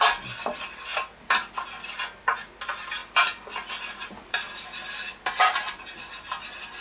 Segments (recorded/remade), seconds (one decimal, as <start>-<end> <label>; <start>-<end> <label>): 0.0-6.8 recorded